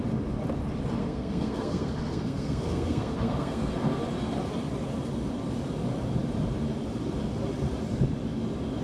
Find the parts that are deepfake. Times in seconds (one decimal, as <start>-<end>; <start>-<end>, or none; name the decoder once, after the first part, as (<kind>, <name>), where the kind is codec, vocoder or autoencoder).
1.0-4.0 (codec, SNAC)